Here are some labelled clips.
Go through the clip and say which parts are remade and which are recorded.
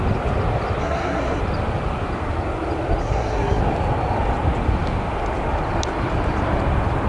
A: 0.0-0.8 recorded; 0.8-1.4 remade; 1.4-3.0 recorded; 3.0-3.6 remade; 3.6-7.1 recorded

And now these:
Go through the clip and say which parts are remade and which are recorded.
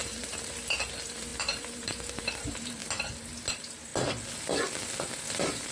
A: 0.0-2.8 remade; 2.8-3.5 recorded; 3.5-3.9 remade; 3.9-5.3 recorded; 5.3-5.7 remade